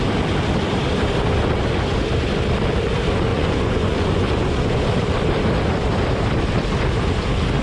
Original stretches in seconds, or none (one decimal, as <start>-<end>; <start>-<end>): 0.0-3.3; 4.8-7.6